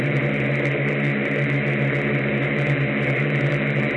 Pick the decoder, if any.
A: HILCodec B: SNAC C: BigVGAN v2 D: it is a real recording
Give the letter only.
D